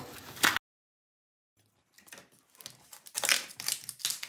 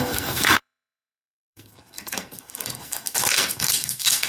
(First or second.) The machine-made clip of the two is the second